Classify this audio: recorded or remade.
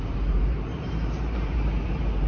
remade